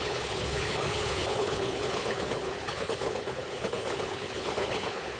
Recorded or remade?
remade